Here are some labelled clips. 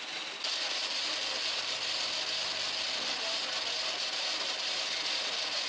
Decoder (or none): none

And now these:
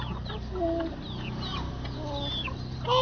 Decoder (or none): none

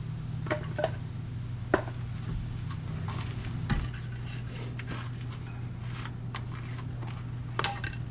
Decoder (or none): none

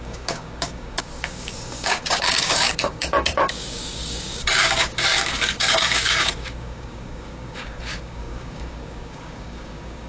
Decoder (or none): codec, DAC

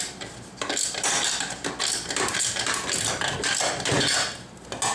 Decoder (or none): none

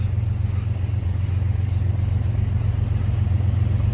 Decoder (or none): none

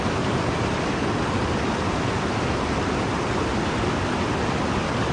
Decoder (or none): none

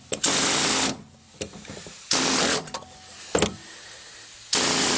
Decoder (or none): none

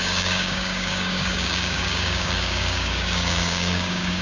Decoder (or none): codec, DAC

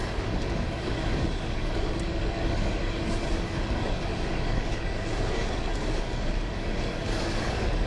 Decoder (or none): codec, DAC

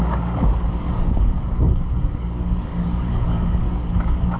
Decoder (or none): codec, DAC